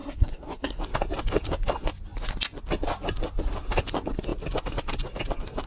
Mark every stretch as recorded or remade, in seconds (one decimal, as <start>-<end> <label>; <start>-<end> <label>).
0.0-0.8 remade; 0.8-5.7 recorded